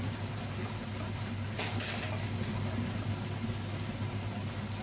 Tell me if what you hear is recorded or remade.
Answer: recorded